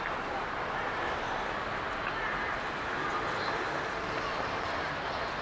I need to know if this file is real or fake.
real